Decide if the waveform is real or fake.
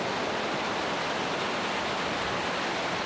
real